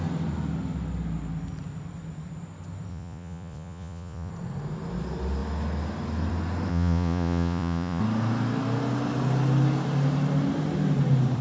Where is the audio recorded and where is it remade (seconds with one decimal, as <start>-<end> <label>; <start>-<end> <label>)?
0.0-2.9 recorded; 2.9-4.3 remade; 4.3-6.7 recorded; 6.7-8.0 remade; 8.0-11.4 recorded